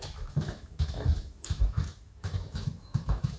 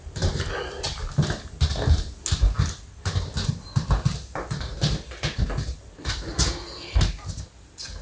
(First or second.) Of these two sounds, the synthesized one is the first